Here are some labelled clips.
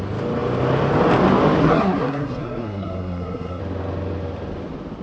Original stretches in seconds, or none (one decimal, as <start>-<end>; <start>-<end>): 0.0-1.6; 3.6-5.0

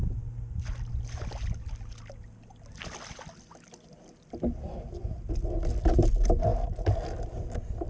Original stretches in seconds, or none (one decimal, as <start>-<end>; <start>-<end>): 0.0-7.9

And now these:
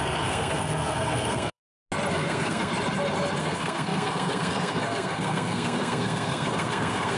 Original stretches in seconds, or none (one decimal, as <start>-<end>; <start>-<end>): 1.6-2.1; 2.7-3.4